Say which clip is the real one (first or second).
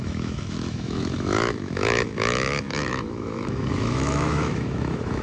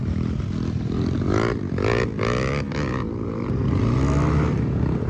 second